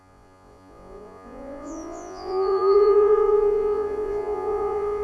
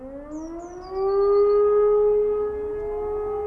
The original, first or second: second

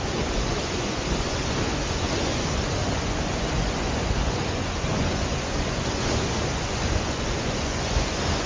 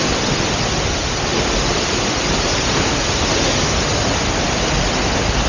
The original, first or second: second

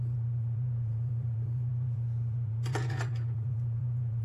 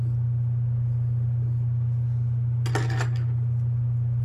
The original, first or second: second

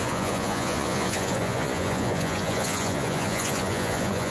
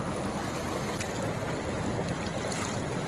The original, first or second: second